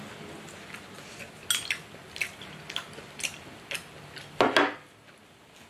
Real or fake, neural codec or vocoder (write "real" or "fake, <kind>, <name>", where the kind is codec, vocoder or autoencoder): real